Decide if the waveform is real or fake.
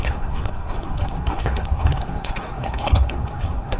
fake